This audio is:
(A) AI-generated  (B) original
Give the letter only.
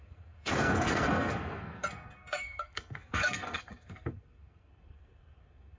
A